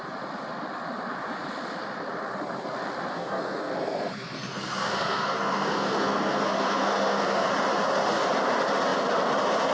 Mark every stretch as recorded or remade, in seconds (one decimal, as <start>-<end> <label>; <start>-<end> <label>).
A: 0.0-3.1 recorded; 3.1-7.5 remade; 7.5-9.7 recorded